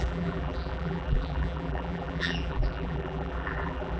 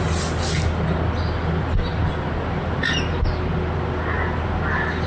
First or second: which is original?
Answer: second